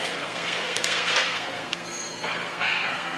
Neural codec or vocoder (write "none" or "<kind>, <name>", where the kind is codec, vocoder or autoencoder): codec, SNAC